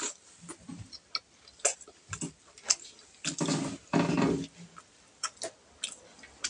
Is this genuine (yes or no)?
yes